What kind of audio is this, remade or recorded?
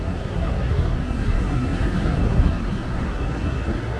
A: remade